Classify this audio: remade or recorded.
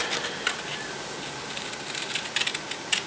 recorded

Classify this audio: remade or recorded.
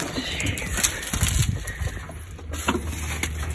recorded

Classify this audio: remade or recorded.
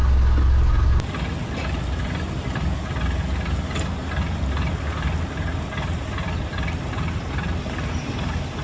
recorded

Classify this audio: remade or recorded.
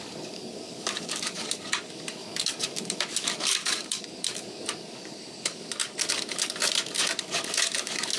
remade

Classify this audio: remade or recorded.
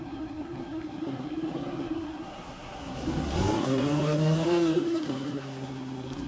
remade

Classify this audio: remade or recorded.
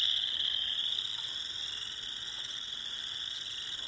recorded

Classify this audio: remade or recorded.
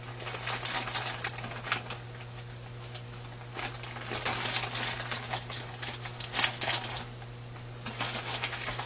recorded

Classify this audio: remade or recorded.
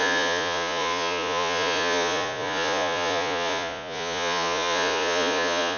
remade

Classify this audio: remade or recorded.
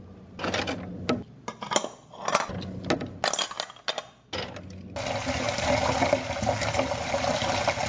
recorded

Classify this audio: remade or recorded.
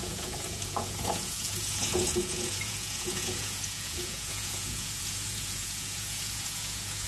remade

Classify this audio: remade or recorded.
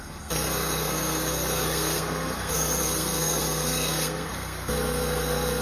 remade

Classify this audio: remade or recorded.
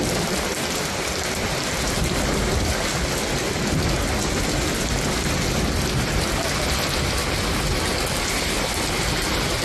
recorded